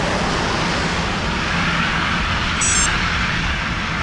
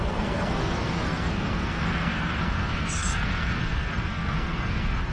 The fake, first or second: second